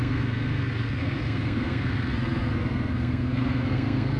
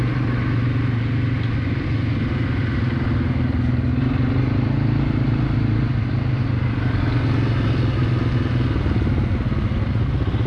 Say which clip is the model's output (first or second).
first